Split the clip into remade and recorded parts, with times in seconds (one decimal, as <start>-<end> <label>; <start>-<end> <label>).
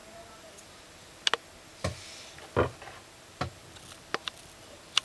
0.0-5.0 recorded